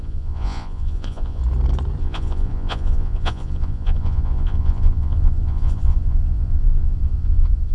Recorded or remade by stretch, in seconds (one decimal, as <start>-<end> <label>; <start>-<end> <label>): 0.0-1.4 remade; 1.4-2.0 recorded; 2.0-7.7 remade